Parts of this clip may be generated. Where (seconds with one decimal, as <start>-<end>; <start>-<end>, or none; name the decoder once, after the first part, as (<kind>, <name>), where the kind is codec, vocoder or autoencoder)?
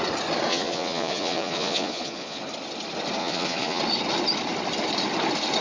0.5-2.4 (vocoder, Vocos); 3.2-3.8